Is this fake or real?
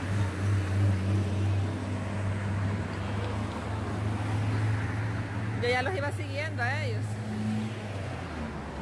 real